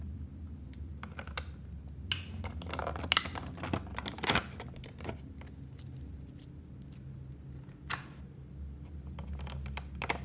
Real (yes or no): yes